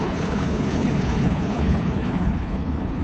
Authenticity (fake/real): fake